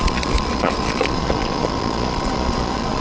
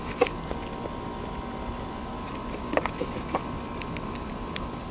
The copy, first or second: first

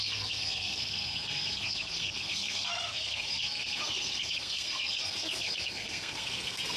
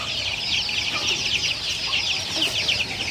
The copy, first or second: first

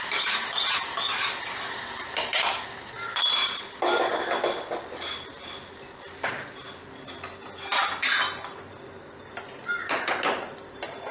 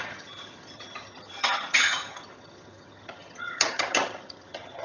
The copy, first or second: second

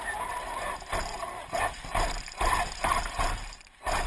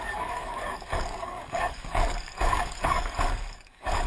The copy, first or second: second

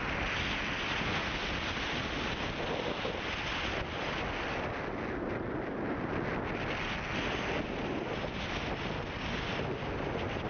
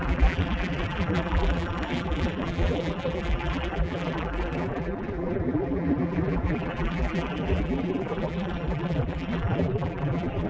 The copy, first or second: second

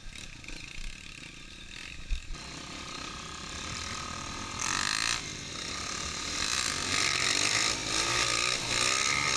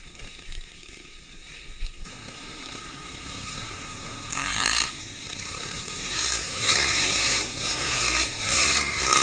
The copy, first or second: second